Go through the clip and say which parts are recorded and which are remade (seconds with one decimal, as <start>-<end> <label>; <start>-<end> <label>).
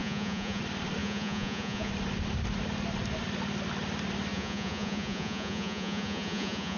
0.0-0.6 remade; 0.6-1.0 recorded; 1.0-1.9 remade; 1.9-4.3 recorded; 4.3-6.8 remade